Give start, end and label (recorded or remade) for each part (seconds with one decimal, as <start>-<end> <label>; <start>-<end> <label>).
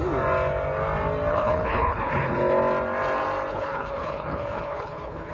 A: 0.0-1.3 recorded; 1.3-2.4 remade; 2.4-3.5 recorded; 3.5-5.3 remade